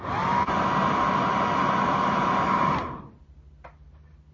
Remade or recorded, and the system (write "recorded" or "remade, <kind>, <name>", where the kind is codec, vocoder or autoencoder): recorded